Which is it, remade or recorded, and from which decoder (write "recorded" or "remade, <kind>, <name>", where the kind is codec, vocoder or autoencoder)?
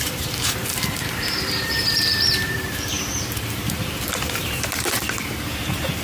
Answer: remade, vocoder, BigVGAN v2